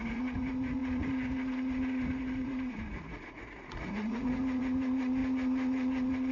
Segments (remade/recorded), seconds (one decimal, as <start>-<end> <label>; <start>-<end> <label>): 0.0-6.3 remade